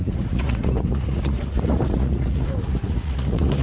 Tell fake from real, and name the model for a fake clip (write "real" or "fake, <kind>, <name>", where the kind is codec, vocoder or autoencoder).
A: fake, vocoder, Vocos